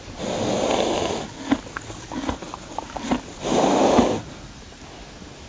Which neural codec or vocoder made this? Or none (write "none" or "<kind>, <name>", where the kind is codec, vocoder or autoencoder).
none